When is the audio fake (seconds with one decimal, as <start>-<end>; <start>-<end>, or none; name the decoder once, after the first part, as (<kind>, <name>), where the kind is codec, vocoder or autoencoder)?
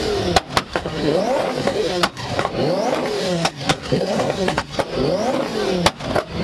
0.7-1.2 (codec, SNAC); 1.6-2.5; 3.2-4.8